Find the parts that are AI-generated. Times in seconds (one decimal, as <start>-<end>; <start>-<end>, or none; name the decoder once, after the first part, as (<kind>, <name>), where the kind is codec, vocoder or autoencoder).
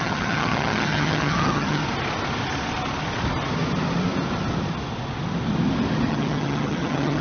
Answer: 0.0-1.8 (vocoder, HiFi-GAN); 6.1-7.2